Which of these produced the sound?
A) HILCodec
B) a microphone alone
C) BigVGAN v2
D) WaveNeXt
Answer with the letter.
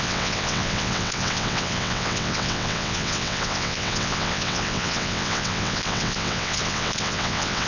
D